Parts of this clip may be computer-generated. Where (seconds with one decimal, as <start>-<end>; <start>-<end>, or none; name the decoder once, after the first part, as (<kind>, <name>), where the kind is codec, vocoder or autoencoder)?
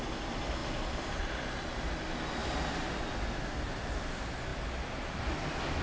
none